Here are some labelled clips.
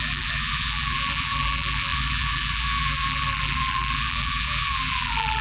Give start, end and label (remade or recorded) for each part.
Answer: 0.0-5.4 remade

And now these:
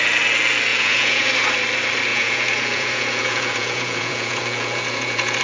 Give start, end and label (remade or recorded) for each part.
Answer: 0.0-0.7 recorded; 0.7-1.3 remade; 1.3-2.1 recorded; 2.1-5.4 remade

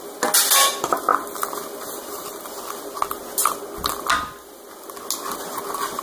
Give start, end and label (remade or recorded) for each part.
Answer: 0.0-6.0 recorded

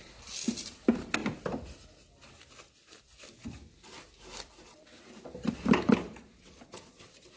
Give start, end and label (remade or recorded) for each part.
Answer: 0.0-7.4 recorded

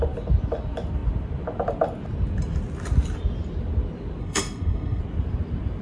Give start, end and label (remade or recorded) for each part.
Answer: 0.0-4.2 recorded; 4.2-5.0 remade; 5.0-5.8 recorded

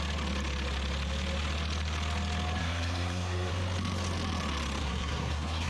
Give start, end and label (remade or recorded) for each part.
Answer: 0.0-2.6 recorded; 2.6-3.5 remade; 3.5-4.8 recorded; 4.8-5.7 remade

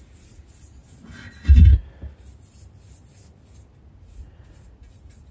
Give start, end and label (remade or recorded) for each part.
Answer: 0.0-0.8 remade; 0.8-4.0 recorded; 4.0-5.3 remade